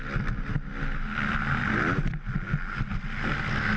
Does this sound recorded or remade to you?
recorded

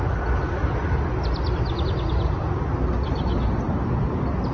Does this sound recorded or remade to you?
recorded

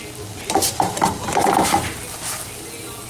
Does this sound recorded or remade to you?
recorded